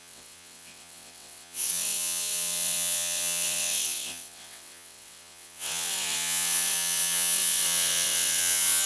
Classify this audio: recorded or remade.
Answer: remade